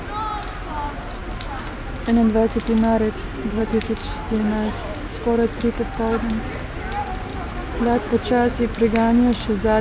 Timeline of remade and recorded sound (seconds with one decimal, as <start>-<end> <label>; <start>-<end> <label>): 0.0-4.0 recorded; 4.0-5.0 remade; 5.0-7.3 recorded; 7.3-8.6 remade; 8.6-9.8 recorded